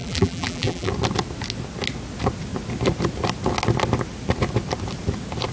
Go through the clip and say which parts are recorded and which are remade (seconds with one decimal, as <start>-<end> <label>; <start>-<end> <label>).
0.0-0.9 remade; 0.9-5.5 recorded